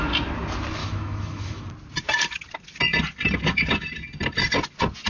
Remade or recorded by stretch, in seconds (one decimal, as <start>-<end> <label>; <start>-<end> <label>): 0.0-0.8 recorded; 0.8-1.7 remade; 1.7-5.1 recorded